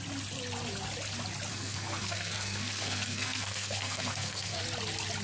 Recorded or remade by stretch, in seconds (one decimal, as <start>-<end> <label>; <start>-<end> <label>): 0.0-1.5 recorded; 1.5-4.6 remade; 4.6-5.2 recorded